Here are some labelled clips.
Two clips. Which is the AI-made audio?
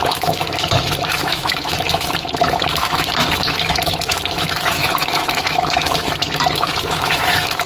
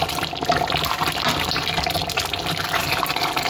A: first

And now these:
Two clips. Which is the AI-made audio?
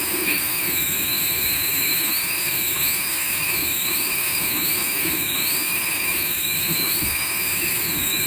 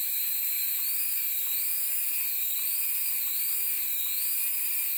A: first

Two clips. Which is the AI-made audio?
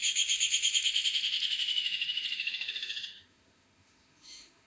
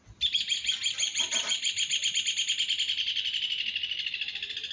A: first